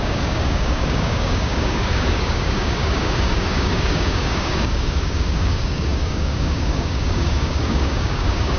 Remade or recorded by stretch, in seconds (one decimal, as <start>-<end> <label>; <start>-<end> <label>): 0.0-8.6 remade